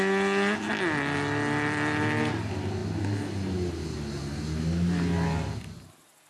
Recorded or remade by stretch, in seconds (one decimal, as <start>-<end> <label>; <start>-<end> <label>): 0.0-6.3 recorded